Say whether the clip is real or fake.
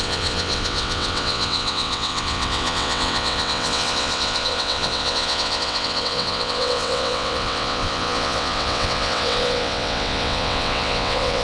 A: fake